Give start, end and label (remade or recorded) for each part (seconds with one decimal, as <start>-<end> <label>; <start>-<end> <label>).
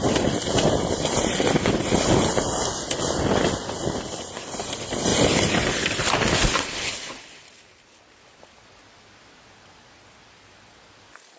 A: 0.0-11.4 recorded